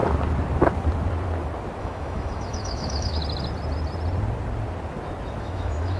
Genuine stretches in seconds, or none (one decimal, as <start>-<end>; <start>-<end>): 0.0-1.8; 3.2-5.4